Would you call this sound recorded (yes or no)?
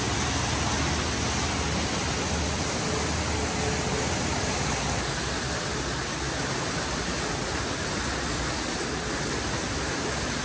yes